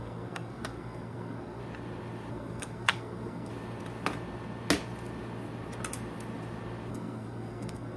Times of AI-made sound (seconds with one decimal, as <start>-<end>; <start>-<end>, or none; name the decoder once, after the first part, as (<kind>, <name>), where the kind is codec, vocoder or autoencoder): 0.0-1.6 (codec, SNAC); 2.3-3.5; 6.9-8.0